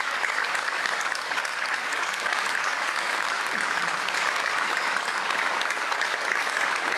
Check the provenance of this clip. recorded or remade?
remade